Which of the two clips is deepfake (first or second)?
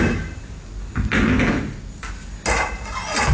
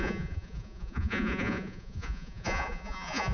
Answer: second